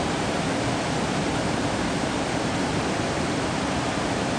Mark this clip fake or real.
real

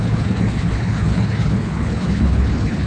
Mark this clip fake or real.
fake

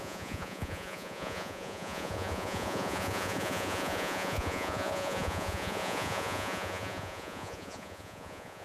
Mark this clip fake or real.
fake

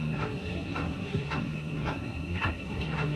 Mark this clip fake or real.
fake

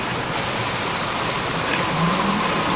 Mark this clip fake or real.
real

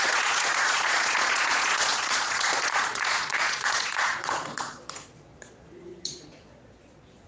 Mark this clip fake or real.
fake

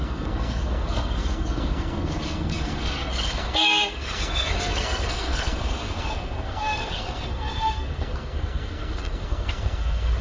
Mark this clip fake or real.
fake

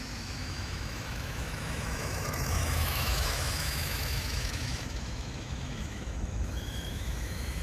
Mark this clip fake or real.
fake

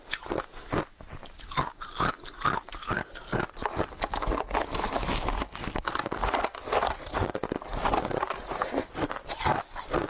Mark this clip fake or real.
real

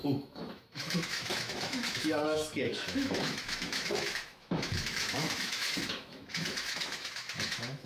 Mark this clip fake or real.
fake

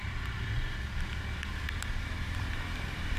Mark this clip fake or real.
real